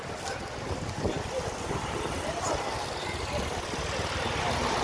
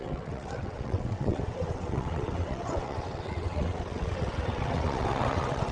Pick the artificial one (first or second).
second